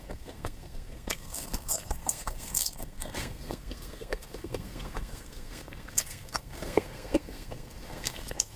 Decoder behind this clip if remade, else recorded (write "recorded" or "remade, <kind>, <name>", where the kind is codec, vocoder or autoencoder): remade, codec, SNAC